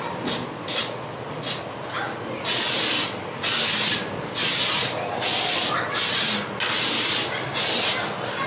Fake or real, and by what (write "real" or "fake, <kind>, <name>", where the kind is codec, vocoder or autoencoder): real